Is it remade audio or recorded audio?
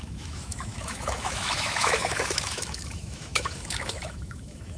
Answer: remade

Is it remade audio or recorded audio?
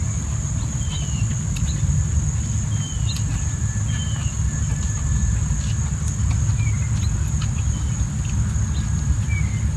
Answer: recorded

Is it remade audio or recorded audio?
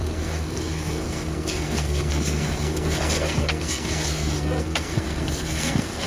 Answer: remade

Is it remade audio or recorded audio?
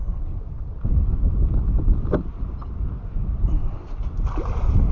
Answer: recorded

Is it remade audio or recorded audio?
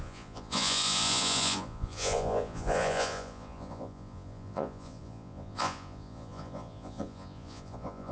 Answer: remade